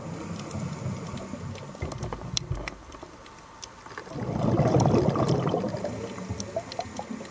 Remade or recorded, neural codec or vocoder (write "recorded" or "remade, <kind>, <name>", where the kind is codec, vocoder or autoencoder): recorded